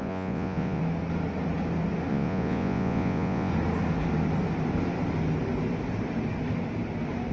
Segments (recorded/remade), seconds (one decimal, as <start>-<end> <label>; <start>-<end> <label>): 0.0-0.8 remade; 0.8-2.1 recorded; 2.1-3.5 remade; 3.5-7.3 recorded